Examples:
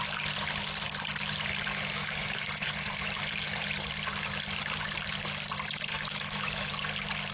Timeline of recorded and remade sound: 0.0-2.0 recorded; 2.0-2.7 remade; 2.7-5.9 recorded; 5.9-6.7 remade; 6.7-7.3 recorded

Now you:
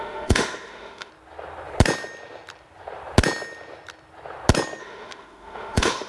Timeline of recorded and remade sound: 0.0-1.1 remade; 1.1-4.8 recorded; 4.8-6.1 remade

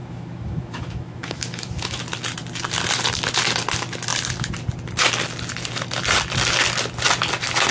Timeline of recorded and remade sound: 0.0-2.0 remade; 2.0-7.7 recorded

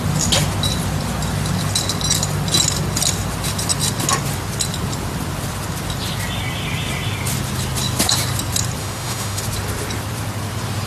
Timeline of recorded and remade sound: 0.0-8.8 recorded; 8.8-9.4 remade; 9.4-10.9 recorded